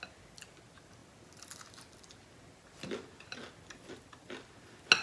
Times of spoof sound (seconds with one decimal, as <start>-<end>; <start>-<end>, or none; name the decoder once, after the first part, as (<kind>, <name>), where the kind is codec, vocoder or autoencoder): none